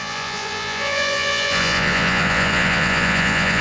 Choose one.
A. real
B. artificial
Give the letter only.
B